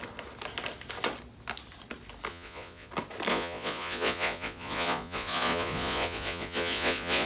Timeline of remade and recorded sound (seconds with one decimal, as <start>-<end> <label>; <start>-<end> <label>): 0.0-2.3 recorded; 2.3-2.9 remade; 2.9-3.3 recorded; 3.3-7.3 remade